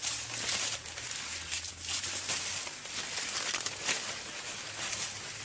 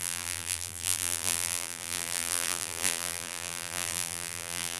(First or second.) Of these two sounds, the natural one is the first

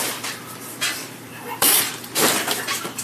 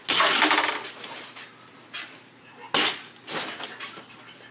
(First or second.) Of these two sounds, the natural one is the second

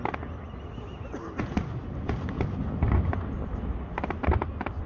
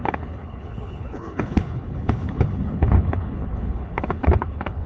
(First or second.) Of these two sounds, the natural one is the first